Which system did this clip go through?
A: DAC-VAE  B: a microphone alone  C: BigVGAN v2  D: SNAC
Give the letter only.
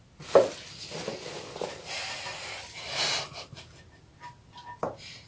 B